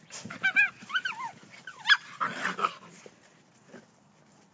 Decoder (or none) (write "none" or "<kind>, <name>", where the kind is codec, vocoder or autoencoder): none